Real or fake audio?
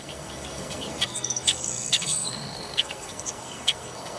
fake